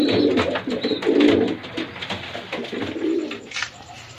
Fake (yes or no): no